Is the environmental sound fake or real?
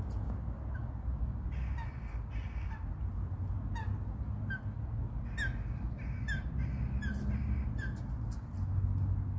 real